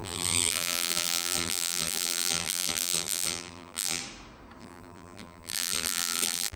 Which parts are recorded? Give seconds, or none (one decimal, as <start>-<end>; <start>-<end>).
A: 4.0-4.6